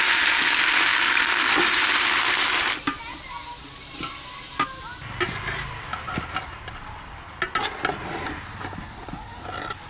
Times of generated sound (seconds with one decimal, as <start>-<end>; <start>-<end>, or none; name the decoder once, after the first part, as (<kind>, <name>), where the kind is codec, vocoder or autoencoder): none